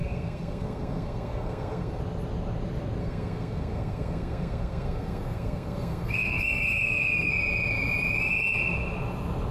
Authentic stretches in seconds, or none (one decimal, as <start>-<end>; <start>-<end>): 2.0-3.0; 7.3-9.5